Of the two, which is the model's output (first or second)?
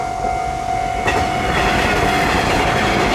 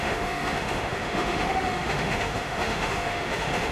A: second